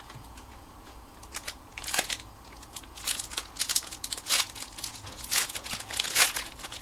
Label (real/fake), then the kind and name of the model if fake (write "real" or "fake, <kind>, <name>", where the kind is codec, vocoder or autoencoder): fake, vocoder, Vocos